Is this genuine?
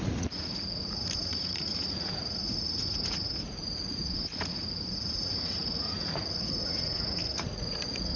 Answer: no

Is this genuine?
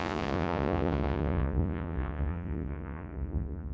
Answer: no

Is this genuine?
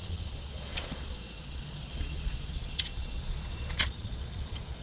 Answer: no